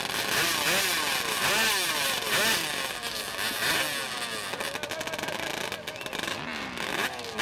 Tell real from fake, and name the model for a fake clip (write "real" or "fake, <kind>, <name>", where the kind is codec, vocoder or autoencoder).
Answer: real